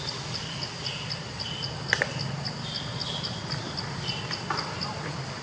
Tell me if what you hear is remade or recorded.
recorded